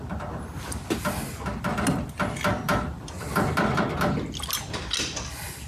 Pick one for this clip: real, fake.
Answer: real